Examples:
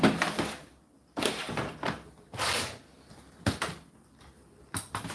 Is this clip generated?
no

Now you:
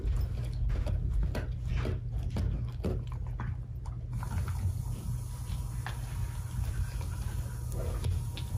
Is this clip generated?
no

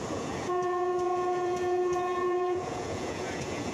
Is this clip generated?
yes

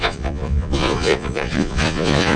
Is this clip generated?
yes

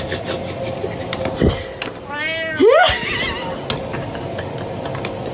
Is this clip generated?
no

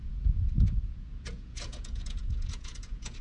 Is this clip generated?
yes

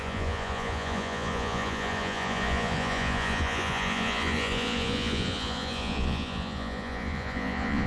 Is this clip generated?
yes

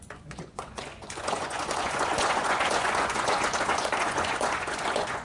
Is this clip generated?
yes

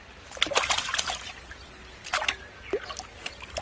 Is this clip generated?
no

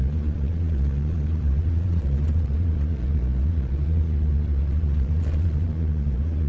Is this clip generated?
yes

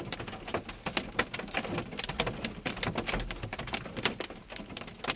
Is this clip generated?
no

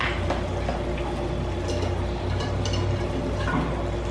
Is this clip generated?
no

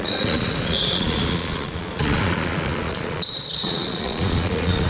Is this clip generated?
yes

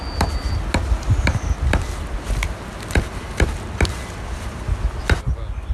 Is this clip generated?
no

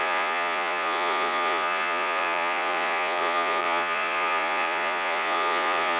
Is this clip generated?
yes